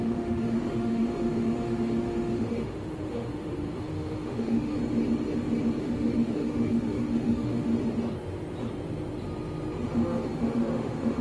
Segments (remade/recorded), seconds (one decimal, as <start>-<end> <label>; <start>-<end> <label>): 0.0-4.8 remade; 4.8-5.8 recorded; 5.8-7.7 remade; 7.7-10.4 recorded; 10.4-11.2 remade